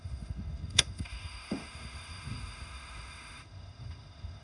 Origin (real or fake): fake